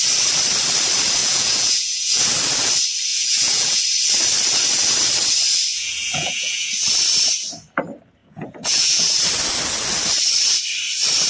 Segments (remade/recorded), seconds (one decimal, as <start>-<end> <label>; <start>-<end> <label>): 0.0-1.2 recorded; 1.2-2.3 remade; 2.3-3.1 recorded; 3.1-3.8 remade; 3.8-5.7 recorded; 5.7-6.7 remade; 6.7-8.2 recorded; 8.2-9.2 remade; 9.2-11.3 recorded